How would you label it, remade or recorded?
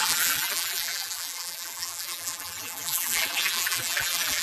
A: remade